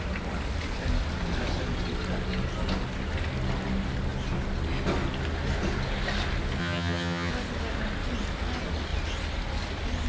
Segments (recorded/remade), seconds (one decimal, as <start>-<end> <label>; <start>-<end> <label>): 0.0-6.6 recorded; 6.6-7.3 remade; 7.3-10.1 recorded